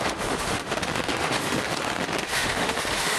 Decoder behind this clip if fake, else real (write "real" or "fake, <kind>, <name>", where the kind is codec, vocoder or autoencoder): fake, autoencoder, DAC-VAE